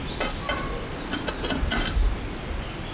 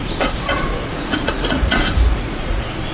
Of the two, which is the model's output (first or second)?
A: second